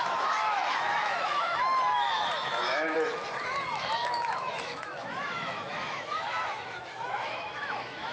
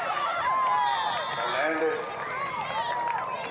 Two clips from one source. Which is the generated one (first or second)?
first